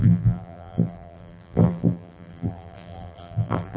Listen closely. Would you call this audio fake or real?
fake